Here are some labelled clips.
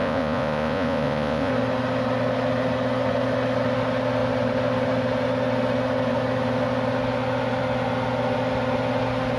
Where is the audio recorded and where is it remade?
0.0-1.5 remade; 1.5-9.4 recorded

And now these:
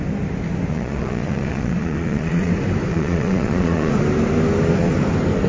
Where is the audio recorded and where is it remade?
0.0-0.7 recorded; 0.7-2.5 remade; 2.5-2.9 recorded; 2.9-3.9 remade; 3.9-5.5 recorded

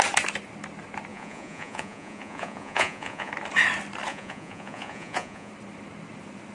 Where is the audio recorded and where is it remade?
0.0-1.1 recorded; 1.1-3.3 remade; 3.3-4.1 recorded; 4.1-5.5 remade; 5.5-6.5 recorded

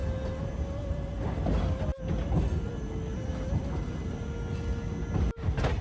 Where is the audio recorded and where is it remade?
0.0-5.8 recorded

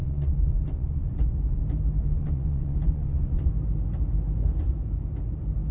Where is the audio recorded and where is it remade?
0.0-1.6 remade; 1.6-2.0 recorded; 2.0-3.5 remade; 3.5-5.7 recorded